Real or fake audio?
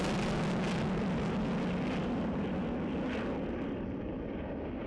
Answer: real